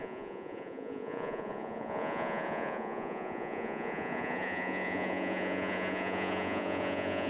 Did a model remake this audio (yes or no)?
yes